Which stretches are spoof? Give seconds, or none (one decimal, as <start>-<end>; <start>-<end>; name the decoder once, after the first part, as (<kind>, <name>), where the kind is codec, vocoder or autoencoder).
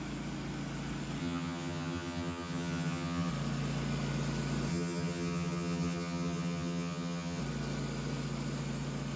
1.2-3.3 (vocoder, HiFi-GAN); 4.7-7.4